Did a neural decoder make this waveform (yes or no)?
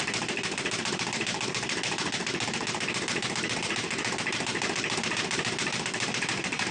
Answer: yes